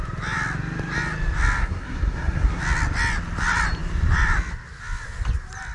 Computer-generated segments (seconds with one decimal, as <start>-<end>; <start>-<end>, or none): 1.6-2.6